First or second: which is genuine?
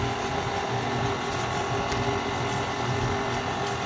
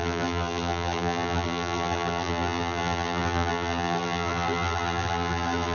first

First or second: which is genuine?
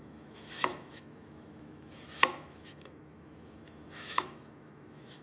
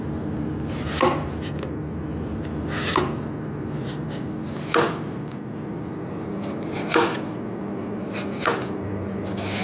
second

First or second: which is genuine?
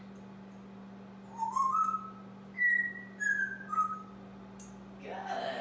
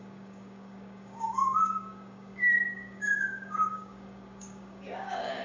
first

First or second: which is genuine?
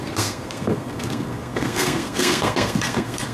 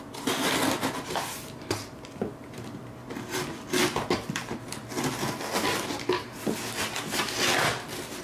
second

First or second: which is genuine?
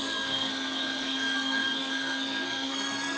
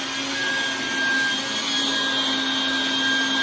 second